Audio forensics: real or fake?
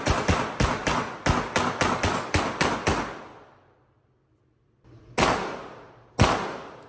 real